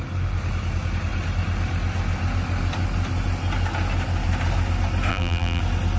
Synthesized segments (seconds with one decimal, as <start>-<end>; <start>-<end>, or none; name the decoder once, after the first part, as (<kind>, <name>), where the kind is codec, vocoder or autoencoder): 5.1-5.6 (vocoder, BigVGAN v2)